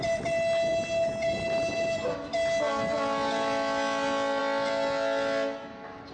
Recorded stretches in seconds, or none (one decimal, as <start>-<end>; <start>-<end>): 0.0-6.1